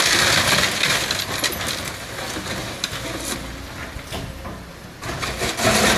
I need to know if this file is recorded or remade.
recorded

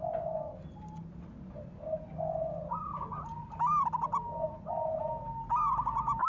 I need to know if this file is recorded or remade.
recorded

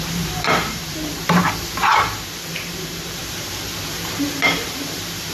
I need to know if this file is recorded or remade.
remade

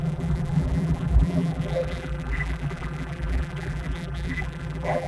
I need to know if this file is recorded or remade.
remade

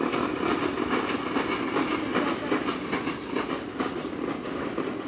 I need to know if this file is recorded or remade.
recorded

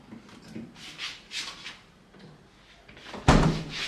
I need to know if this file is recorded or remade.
recorded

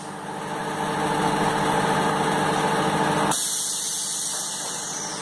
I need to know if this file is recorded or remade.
recorded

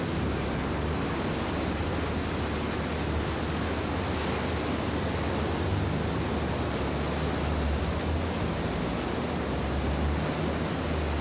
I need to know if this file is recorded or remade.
recorded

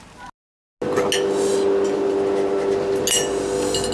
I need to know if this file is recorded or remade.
recorded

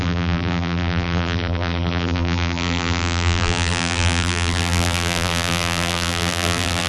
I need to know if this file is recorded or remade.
remade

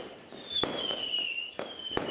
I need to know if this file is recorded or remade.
remade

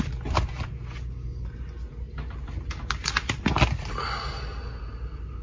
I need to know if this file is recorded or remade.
recorded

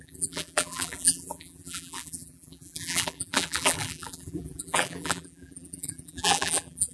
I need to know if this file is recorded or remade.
remade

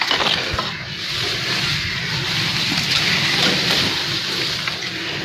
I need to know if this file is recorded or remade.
recorded